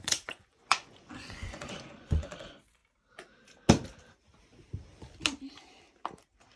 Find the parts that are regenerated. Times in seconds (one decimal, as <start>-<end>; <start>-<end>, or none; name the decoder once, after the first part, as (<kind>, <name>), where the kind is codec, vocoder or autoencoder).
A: 0.0-2.8 (vocoder, Vocos)

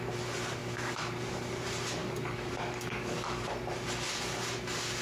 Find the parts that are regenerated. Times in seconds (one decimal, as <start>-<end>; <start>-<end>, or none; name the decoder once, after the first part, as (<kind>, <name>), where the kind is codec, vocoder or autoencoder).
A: 2.0-3.5 (codec, DAC)

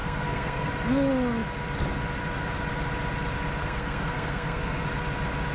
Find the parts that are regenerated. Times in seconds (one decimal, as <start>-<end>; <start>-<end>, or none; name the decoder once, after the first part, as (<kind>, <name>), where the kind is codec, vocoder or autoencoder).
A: 0.0-0.7 (codec, SNAC); 3.6-4.9

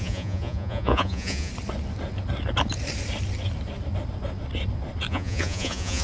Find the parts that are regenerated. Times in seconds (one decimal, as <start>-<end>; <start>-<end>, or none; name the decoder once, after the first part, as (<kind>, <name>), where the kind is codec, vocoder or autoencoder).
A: 0.0-1.5 (vocoder, Vocos); 5.1-6.0